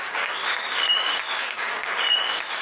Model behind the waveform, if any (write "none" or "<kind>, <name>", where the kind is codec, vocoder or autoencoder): codec, DAC